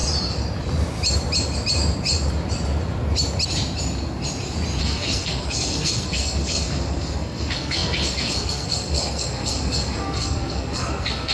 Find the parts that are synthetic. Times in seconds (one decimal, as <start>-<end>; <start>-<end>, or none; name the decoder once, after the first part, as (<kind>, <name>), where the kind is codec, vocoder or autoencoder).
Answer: 4.8-11.3 (codec, SNAC)